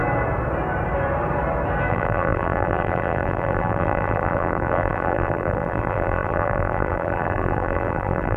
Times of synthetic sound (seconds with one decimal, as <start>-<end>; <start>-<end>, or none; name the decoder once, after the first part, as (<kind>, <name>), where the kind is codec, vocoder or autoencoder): 1.9-8.4 (vocoder, BigVGAN v2)